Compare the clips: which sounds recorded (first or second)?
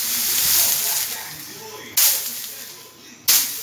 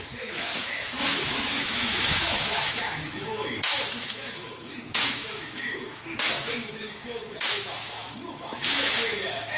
first